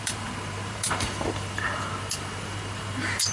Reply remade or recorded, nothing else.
remade